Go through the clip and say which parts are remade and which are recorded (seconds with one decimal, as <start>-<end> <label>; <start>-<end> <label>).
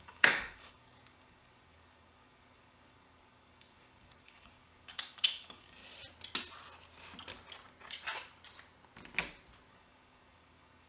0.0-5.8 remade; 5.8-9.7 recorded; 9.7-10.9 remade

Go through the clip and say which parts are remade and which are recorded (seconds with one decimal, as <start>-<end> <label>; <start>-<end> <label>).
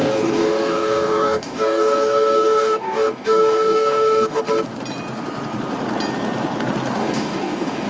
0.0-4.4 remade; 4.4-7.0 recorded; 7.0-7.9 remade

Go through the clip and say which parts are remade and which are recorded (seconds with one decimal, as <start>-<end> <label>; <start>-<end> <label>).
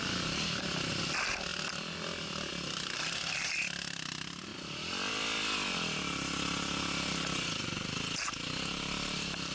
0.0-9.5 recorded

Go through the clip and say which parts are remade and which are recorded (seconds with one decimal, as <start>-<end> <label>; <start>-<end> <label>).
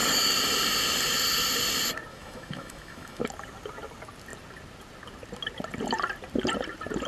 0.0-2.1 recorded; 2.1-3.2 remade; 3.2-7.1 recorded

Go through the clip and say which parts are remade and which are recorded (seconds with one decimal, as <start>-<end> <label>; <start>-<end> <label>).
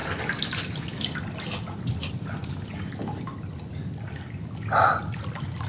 0.0-5.7 recorded